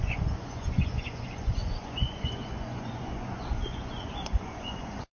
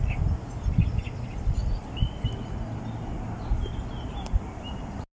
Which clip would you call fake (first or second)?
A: first